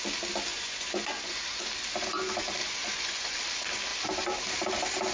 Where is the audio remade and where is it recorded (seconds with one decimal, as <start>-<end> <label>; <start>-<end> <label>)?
0.0-0.5 recorded; 0.5-1.6 remade; 1.6-2.6 recorded; 2.6-3.4 remade; 3.4-5.1 recorded